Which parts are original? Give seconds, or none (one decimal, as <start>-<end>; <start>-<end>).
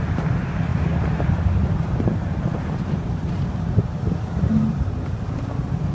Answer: 0.0-5.9